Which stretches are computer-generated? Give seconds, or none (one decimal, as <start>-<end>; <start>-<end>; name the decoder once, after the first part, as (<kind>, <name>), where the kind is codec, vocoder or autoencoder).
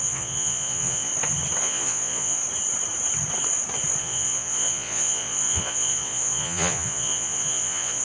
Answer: 0.0-1.1 (vocoder, Vocos); 1.6-2.4; 4.0-8.0